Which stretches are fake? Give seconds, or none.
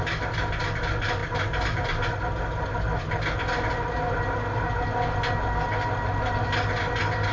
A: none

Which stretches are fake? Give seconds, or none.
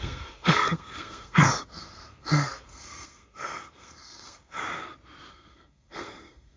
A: 0.0-4.6 (codec, SNAC); 5.3-6.6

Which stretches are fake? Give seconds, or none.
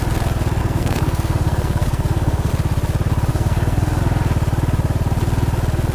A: 0.6-2.5 (codec, SNAC); 3.3-4.0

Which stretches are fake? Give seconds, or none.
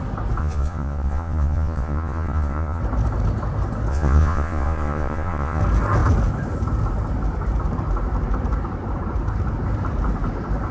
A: 0.4-2.8 (vocoder, Vocos); 3.9-5.6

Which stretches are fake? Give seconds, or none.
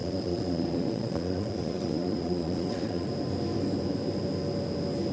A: 0.0-3.1 (vocoder, Vocos)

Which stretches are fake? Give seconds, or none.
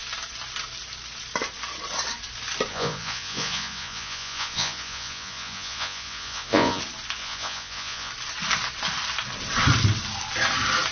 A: 2.7-6.8 (vocoder, Vocos); 7.2-8.1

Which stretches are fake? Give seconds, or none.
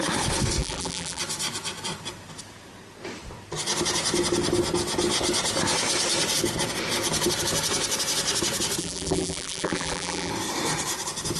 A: 0.6-1.2 (vocoder, BigVGAN v2); 8.8-10.3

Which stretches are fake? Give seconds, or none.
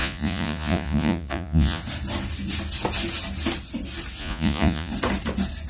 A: 0.0-1.8 (vocoder, Vocos); 4.2-4.9